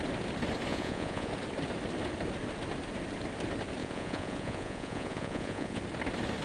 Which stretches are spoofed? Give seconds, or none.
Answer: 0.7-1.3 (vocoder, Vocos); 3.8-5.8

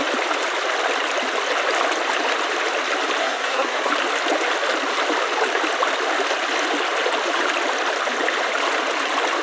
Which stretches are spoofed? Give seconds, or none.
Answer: 3.2-3.9 (codec, SNAC)